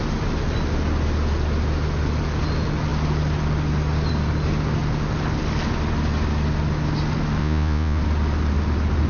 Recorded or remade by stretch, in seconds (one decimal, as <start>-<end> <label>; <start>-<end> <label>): 0.0-7.4 recorded; 7.4-8.0 remade; 8.0-9.1 recorded